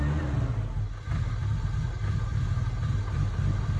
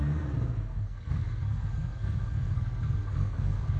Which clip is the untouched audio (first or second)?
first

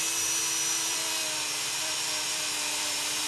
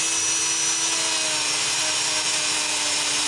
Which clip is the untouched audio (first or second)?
second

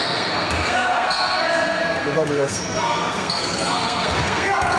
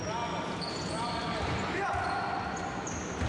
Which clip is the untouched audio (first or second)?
second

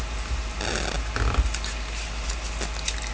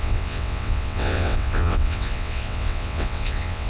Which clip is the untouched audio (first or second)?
first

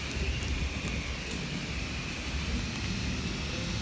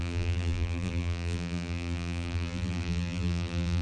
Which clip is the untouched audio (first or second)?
first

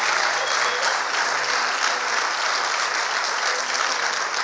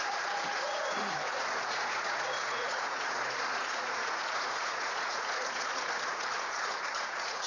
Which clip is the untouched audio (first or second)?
first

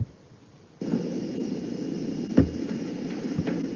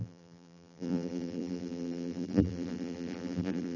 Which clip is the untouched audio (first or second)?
first